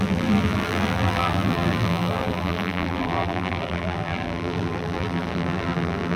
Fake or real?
fake